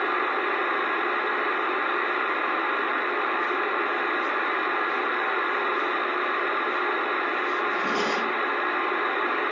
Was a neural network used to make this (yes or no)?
no